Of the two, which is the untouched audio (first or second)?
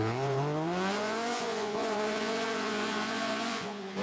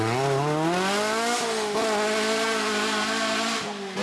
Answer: second